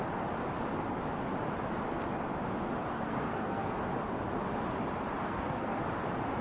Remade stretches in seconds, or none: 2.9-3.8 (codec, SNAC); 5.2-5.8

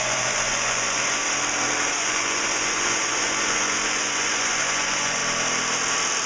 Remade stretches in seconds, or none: 0.0-1.2 (vocoder, Vocos); 1.9-5.2

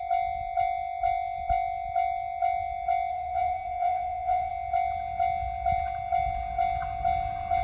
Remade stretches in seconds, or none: 3.1-4.5 (vocoder, Vocos)

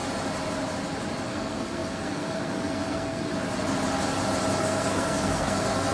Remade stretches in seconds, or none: 1.3-3.3 (codec, SNAC); 4.6-5.9

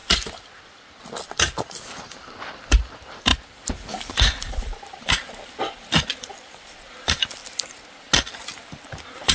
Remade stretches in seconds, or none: 0.0-7.4 (vocoder, BigVGAN v2); 8.3-9.3